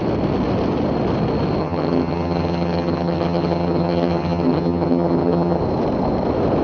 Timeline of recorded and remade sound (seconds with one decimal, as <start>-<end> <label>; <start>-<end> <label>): 0.0-1.6 recorded; 1.6-5.6 remade; 5.6-6.6 recorded